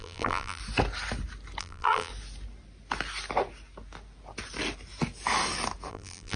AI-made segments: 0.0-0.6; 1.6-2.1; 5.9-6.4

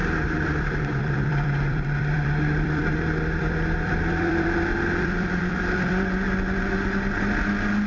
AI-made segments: 0.0-2.8; 3.4-6.6

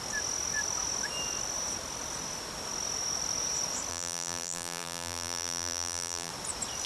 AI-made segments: 3.9-6.3

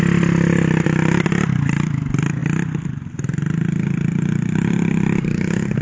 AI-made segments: none

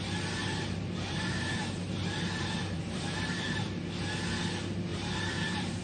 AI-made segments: 0.4-3.9; 4.9-5.8

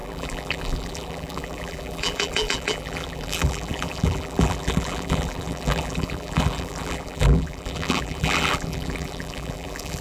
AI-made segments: 0.0-10.0

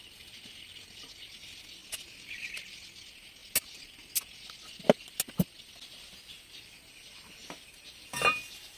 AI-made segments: none